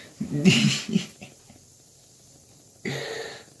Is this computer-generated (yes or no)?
no